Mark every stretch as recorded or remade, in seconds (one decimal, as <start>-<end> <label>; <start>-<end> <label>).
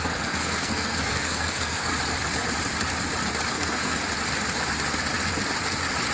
0.0-1.9 remade; 1.9-3.5 recorded; 3.5-4.0 remade; 4.0-6.1 recorded